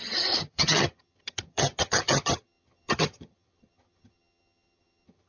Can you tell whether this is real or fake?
fake